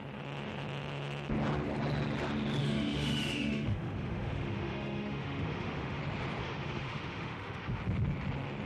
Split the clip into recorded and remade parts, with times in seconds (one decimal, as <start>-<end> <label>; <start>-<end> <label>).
0.0-2.6 recorded; 2.6-6.0 remade; 6.0-6.4 recorded; 6.4-7.8 remade; 7.8-8.7 recorded

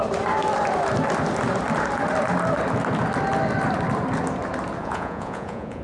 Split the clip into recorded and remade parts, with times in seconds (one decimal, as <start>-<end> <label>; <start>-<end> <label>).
0.0-4.8 recorded; 4.8-5.8 remade